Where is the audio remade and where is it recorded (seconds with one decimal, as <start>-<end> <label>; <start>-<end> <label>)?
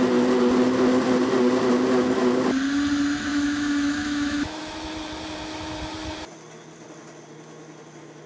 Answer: 0.0-3.3 recorded; 3.3-4.6 remade; 4.6-8.3 recorded